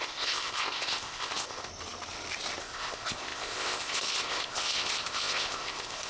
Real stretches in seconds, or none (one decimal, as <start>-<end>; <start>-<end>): 1.7-2.6